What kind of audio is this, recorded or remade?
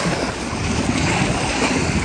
remade